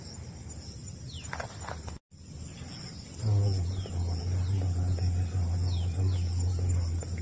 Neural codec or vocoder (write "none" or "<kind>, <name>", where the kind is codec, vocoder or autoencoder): none